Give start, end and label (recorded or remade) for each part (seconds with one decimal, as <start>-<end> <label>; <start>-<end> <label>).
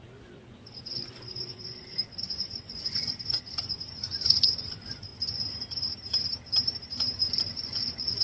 0.0-5.1 remade; 5.1-7.4 recorded; 7.4-8.2 remade